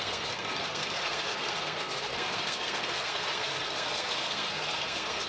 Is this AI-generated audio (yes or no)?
yes